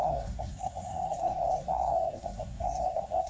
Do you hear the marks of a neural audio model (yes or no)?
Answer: yes